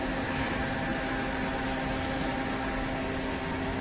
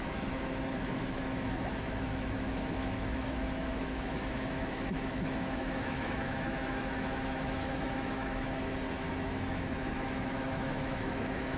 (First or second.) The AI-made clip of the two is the second